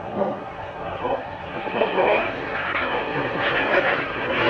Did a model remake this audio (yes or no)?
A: yes